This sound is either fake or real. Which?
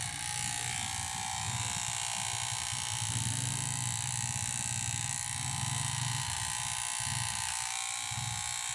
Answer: real